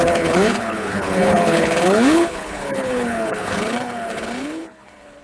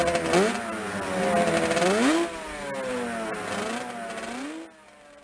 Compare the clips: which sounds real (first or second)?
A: second